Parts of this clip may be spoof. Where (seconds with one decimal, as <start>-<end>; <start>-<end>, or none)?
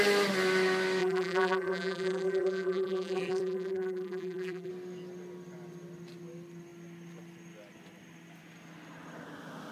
1.0-4.7